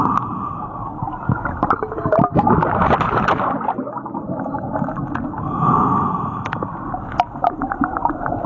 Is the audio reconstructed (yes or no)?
no